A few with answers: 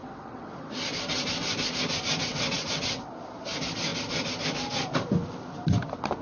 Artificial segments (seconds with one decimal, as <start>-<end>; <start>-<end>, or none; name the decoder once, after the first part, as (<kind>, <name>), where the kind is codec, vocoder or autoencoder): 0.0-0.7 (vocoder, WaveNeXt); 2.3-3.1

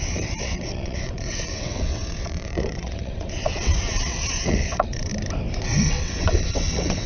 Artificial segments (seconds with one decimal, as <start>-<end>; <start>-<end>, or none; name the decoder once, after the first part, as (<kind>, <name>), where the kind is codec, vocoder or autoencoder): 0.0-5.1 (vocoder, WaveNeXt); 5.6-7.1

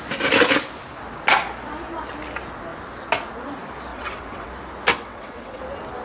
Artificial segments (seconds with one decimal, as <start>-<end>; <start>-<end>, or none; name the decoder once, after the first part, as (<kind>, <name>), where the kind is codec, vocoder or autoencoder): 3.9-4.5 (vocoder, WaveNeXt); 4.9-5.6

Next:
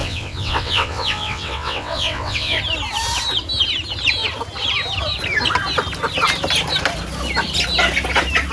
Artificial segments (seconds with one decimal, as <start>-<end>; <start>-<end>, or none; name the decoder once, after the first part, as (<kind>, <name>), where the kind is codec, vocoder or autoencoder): 0.0-2.6 (vocoder, WaveNeXt)

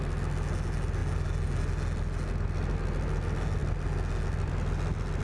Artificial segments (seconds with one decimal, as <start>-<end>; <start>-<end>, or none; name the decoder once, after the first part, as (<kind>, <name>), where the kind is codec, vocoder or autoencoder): none

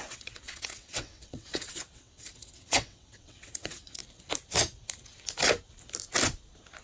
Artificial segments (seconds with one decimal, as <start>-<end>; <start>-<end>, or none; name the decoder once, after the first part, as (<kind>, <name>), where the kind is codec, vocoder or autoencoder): 0.0-4.0 (vocoder, WaveNeXt)